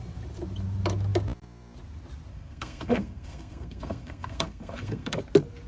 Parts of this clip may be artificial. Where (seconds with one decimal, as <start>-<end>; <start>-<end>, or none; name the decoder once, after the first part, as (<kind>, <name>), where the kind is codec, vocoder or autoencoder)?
2.3-5.2 (codec, SNAC)